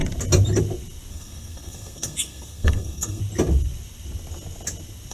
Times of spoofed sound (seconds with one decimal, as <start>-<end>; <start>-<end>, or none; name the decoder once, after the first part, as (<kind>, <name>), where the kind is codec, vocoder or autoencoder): 1.1-3.2 (codec, SNAC)